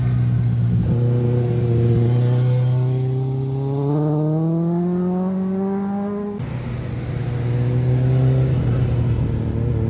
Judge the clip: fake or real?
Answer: real